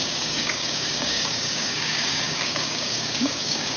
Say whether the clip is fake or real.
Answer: fake